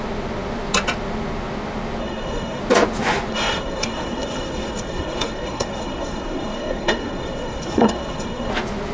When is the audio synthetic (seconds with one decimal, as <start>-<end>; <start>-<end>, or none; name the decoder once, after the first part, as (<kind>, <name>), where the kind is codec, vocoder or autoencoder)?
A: 2.0-2.6 (codec, SNAC); 3.3-8.5